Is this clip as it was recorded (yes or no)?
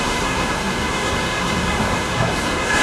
no